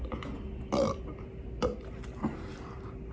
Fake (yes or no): no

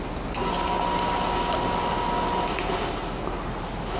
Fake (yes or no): no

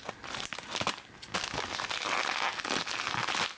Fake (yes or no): no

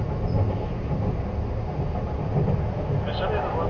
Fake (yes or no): no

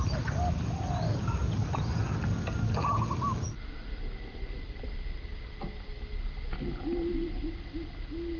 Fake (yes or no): no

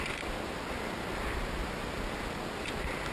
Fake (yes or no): no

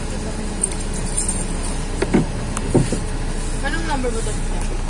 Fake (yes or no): no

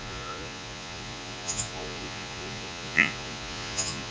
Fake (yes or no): yes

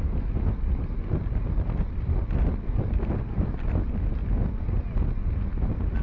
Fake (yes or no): no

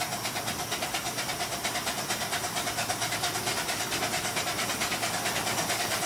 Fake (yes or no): no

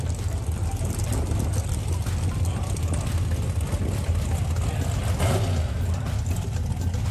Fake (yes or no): no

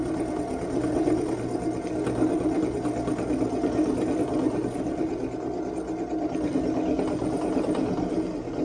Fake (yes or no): no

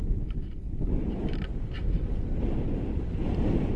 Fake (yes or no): no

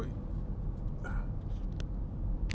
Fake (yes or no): no